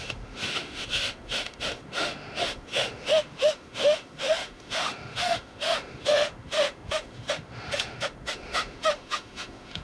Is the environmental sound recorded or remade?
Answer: remade